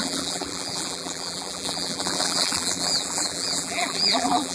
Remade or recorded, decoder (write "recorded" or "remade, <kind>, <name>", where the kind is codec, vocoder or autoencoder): remade, vocoder, BigVGAN v2